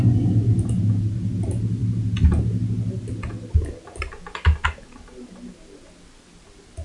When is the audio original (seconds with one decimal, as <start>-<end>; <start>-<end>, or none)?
0.0-6.8